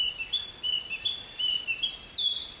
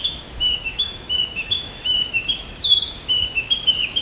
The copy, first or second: second